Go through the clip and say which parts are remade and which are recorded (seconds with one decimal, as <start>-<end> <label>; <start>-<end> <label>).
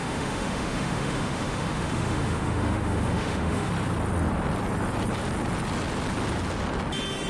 0.0-3.7 remade; 3.7-7.3 recorded